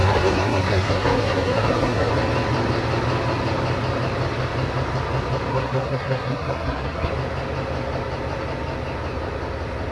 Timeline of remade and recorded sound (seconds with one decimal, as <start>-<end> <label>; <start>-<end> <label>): 0.0-2.1 remade; 2.1-5.5 recorded; 5.5-7.1 remade; 7.1-9.9 recorded